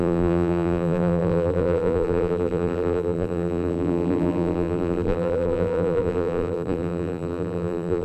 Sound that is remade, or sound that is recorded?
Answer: remade